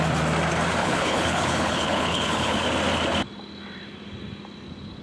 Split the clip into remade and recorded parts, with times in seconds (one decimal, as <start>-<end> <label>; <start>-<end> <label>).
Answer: 0.0-0.8 recorded; 0.8-2.6 remade; 2.6-5.0 recorded